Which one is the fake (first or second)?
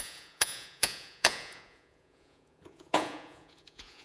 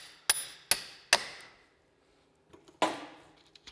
first